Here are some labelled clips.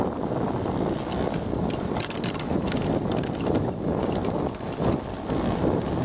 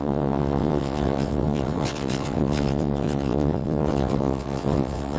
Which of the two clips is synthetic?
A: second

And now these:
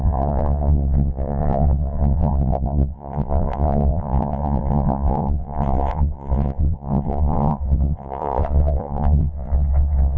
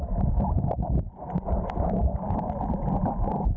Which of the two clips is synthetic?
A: first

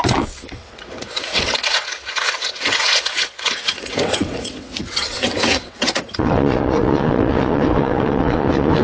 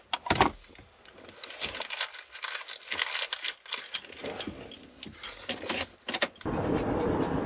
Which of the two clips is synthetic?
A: first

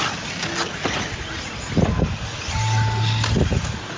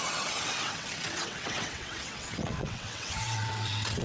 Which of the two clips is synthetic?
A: second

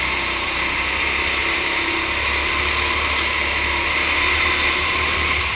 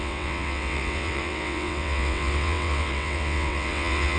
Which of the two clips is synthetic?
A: second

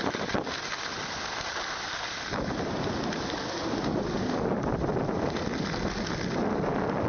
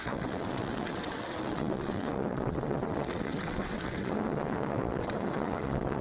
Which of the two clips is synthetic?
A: second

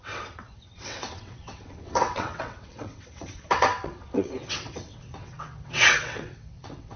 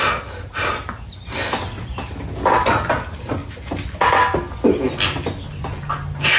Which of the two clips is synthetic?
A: first